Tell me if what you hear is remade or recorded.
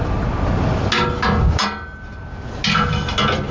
recorded